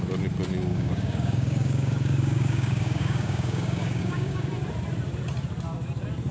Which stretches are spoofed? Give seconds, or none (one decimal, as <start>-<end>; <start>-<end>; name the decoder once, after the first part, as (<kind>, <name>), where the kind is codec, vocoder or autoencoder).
0.7-4.5 (codec, DAC)